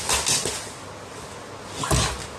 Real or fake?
real